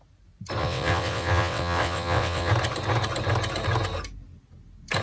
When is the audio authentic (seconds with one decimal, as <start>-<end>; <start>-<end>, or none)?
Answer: 0.0-0.6; 2.5-5.0